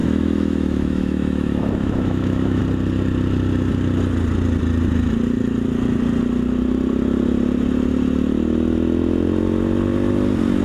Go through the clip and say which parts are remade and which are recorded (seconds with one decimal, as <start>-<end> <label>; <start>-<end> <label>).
0.0-2.6 remade; 2.6-10.6 recorded